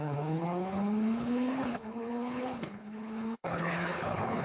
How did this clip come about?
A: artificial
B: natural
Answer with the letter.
A